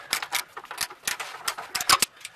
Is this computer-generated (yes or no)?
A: no